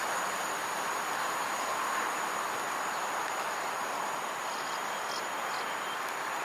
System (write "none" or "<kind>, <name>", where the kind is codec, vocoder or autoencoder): vocoder, BigVGAN v2